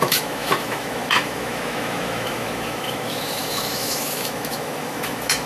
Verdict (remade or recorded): remade